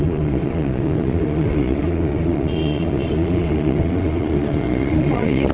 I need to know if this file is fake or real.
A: fake